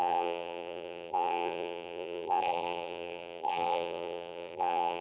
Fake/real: fake